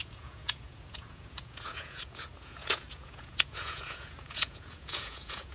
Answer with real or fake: fake